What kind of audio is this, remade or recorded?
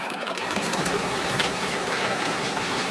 remade